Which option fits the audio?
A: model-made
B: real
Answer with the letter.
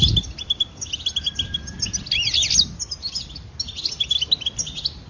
B